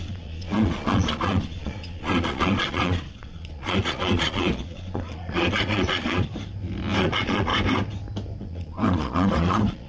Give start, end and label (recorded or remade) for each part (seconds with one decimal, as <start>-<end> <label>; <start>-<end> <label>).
0.0-6.3 remade; 6.3-7.0 recorded; 7.0-7.5 remade; 7.5-8.4 recorded; 8.4-9.9 remade